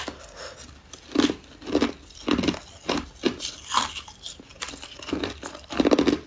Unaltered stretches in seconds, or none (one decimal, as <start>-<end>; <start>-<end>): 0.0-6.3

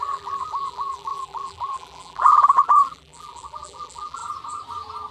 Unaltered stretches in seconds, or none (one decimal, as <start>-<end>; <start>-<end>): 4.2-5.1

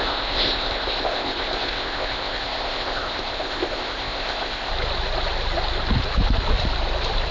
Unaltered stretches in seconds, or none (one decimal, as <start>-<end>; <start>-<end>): 4.7-7.3